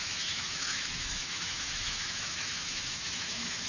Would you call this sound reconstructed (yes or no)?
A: yes